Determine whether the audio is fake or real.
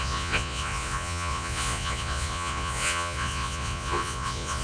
fake